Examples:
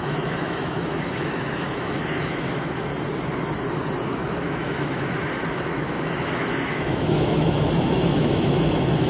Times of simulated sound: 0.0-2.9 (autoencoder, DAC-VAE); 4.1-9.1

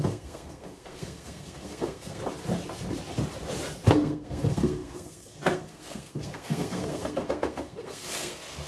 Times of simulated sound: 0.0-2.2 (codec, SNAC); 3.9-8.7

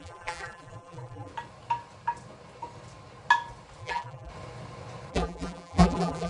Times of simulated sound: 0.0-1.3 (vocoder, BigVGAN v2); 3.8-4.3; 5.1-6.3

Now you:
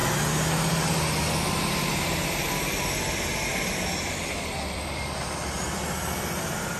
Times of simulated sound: 4.1-6.8 (vocoder, BigVGAN v2)